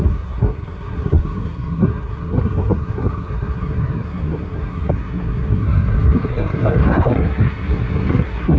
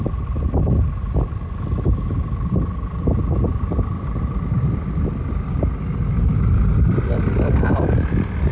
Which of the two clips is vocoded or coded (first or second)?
first